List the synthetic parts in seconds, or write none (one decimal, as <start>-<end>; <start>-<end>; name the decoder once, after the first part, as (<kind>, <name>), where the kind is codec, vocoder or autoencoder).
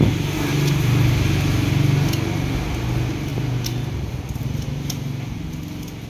none